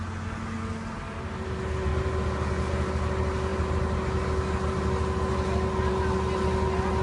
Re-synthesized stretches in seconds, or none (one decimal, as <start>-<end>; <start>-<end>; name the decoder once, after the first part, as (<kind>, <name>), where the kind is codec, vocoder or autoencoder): none